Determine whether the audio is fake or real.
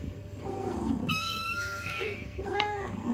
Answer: fake